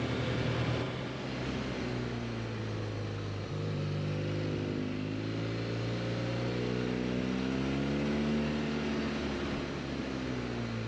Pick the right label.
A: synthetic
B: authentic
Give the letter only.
B